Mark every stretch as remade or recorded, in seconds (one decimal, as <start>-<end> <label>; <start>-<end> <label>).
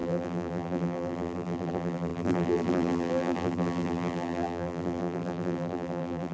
0.0-6.3 remade